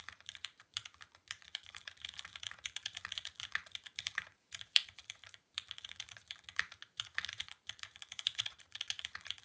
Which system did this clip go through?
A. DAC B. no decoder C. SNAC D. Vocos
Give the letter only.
D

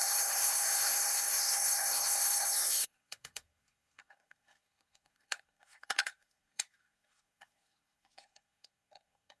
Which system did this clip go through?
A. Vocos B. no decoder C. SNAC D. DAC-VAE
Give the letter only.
C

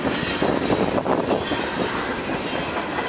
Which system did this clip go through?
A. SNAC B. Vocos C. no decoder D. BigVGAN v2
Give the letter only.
C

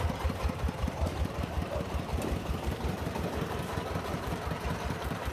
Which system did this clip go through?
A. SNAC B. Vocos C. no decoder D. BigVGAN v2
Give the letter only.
D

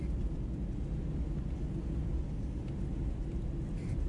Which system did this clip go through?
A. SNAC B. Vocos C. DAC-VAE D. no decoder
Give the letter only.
D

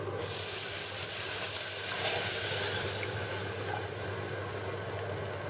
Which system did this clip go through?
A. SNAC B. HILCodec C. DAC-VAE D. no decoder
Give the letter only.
D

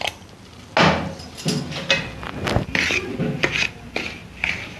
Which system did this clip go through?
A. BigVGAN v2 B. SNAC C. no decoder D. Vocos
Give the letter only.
C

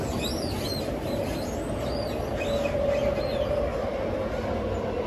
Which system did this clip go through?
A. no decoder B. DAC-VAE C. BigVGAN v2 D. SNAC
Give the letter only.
A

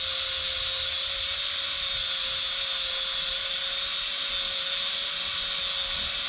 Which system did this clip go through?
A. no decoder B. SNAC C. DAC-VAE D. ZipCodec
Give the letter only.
A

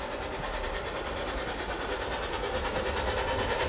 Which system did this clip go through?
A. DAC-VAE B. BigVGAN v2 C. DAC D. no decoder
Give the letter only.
B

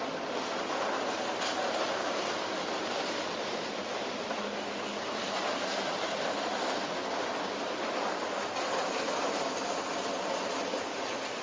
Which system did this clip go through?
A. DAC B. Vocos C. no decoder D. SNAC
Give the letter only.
C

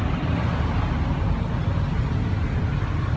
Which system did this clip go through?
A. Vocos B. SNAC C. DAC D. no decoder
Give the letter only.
D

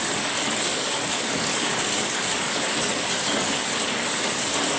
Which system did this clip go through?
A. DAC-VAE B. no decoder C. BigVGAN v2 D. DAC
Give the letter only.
D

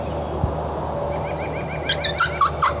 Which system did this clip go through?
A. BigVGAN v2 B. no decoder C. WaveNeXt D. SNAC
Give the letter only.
B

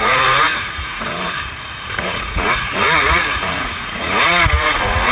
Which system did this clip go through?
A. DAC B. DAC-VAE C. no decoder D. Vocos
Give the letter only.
D